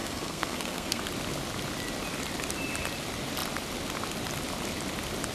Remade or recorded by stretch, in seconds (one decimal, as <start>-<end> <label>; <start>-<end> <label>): 0.0-1.0 remade; 1.0-5.3 recorded